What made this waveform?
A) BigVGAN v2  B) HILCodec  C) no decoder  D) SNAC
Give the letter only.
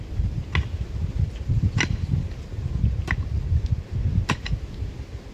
C